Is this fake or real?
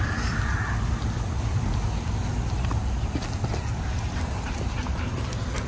real